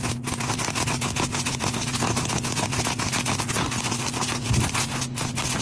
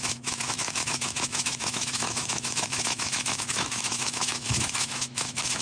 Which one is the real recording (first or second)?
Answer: first